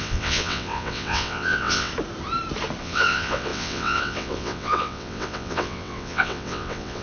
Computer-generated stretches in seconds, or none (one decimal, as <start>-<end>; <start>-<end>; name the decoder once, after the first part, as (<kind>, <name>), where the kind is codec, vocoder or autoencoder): 0.0-1.9 (vocoder, WaveNeXt); 2.8-7.0